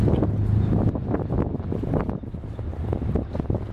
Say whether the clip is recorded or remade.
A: recorded